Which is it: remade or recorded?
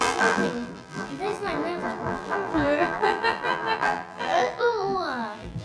remade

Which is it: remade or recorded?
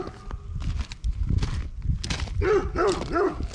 recorded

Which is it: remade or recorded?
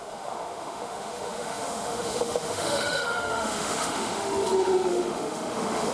remade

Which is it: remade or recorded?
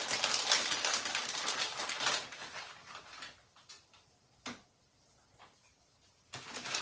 recorded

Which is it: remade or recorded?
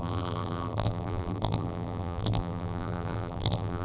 remade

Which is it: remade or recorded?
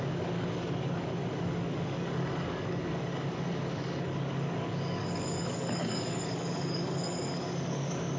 remade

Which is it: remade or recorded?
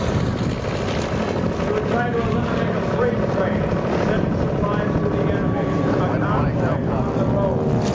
recorded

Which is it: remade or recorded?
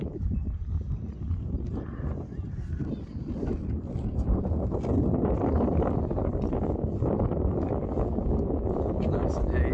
recorded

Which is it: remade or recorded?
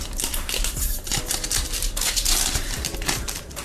remade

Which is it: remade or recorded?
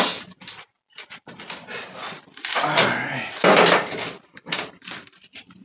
recorded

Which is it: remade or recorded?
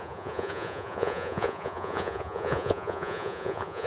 remade